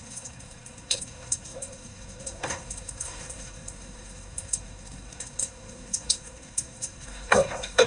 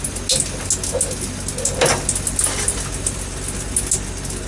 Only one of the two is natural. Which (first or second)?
second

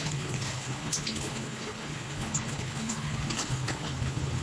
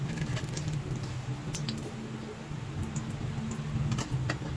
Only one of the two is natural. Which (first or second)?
second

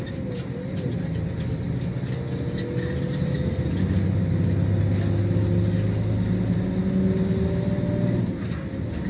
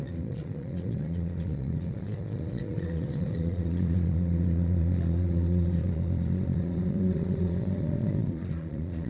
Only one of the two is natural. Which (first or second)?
first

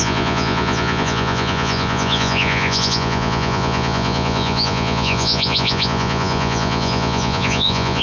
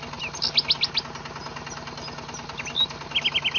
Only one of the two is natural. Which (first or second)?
second